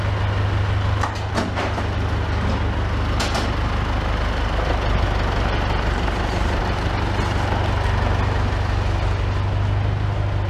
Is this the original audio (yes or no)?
yes